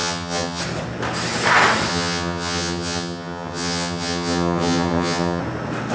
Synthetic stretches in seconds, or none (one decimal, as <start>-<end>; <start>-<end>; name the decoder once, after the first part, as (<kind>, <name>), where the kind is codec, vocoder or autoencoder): 0.0-0.6 (vocoder, HiFi-GAN); 1.9-5.4